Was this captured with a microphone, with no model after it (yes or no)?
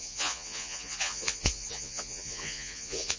no